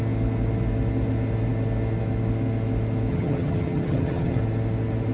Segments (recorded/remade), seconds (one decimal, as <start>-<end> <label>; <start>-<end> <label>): 0.0-3.1 recorded; 3.1-4.4 remade; 4.4-5.1 recorded